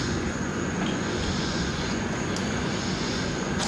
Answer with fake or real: fake